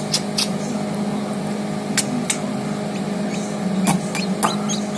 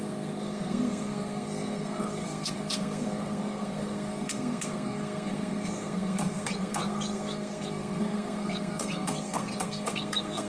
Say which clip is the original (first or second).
first